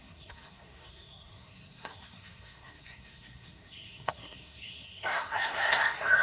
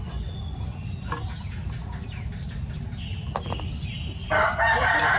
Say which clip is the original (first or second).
second